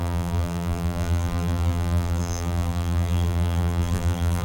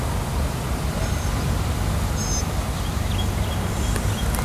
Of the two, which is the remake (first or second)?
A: first